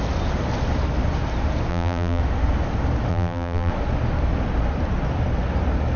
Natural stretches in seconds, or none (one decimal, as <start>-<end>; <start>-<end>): 0.0-1.7; 2.2-3.1; 3.7-6.0